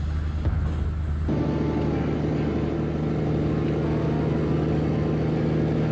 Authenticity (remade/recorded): recorded